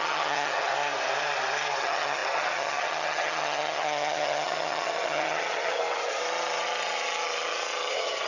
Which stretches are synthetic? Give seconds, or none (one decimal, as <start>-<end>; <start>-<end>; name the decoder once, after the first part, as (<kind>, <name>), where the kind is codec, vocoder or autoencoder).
0.0-0.7 (vocoder, HiFi-GAN); 1.8-6.2; 7.9-8.3